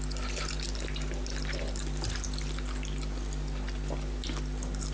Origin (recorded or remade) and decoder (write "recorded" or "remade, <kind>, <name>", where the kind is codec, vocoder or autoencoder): recorded